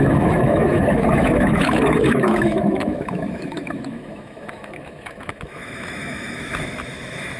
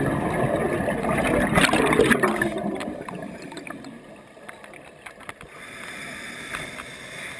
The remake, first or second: first